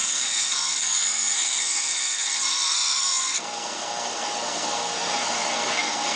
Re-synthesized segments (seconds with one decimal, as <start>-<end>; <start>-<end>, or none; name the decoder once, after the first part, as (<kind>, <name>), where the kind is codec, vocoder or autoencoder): 0.0-6.2 (codec, SNAC)